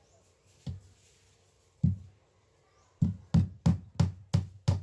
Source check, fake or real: real